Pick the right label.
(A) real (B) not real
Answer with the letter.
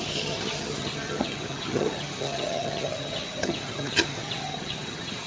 B